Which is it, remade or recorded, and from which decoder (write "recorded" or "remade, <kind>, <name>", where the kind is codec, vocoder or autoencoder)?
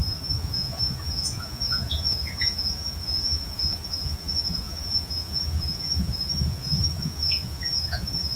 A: remade, vocoder, Vocos